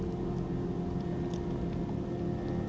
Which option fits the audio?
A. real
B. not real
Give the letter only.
A